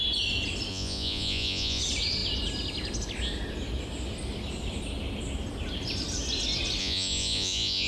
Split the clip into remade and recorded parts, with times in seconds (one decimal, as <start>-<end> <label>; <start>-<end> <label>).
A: 0.0-0.7 recorded; 0.7-1.8 remade; 1.8-6.8 recorded; 6.8-7.9 remade